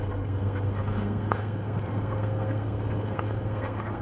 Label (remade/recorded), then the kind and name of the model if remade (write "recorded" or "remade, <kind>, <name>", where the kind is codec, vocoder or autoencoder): remade, codec, SNAC